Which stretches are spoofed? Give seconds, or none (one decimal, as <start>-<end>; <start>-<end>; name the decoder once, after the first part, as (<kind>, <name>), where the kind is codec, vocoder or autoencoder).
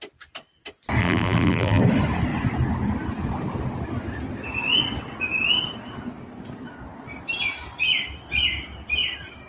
1.0-1.8 (vocoder, BigVGAN v2)